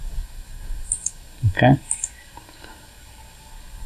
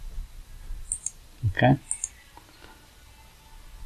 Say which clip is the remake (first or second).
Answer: first